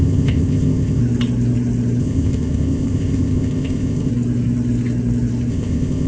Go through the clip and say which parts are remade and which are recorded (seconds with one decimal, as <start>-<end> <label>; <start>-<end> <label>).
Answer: 0.0-1.0 remade; 1.0-2.0 recorded; 2.0-4.1 remade; 4.1-5.5 recorded; 5.5-6.1 remade